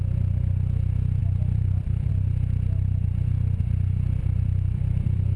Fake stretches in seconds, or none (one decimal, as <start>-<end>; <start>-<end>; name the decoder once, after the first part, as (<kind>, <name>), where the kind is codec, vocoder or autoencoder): 1.2-2.1 (vocoder, BigVGAN v2); 4.2-5.4